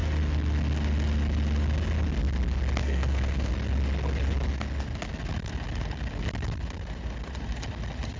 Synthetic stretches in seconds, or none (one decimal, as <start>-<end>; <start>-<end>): 2.8-3.5